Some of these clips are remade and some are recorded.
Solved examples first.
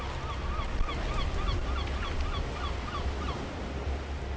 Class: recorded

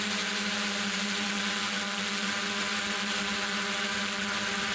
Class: recorded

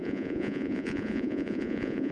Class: remade